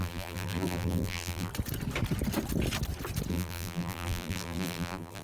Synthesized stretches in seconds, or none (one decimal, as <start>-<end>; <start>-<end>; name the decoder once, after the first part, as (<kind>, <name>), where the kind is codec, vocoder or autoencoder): 0.0-1.5 (vocoder, BigVGAN v2); 3.3-5.2